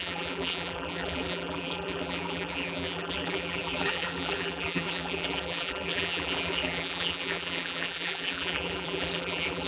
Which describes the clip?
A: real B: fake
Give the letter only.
B